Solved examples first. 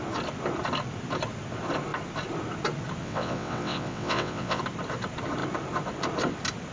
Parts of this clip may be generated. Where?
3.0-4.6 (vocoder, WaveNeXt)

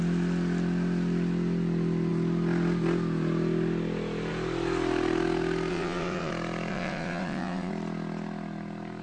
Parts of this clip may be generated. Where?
5.7-6.3 (vocoder, WaveNeXt); 6.7-7.7

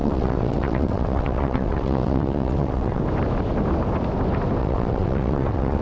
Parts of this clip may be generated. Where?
0.0-3.0 (vocoder, WaveNeXt); 4.6-5.8

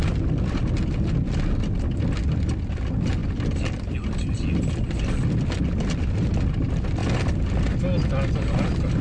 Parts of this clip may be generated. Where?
none

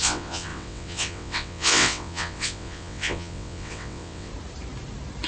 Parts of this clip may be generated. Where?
0.0-4.3 (vocoder, WaveNeXt)

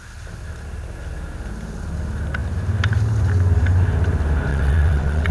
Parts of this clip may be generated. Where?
4.5-5.3 (vocoder, WaveNeXt)

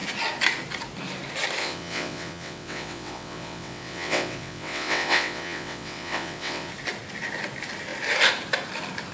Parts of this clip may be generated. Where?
1.6-6.7 (vocoder, WaveNeXt)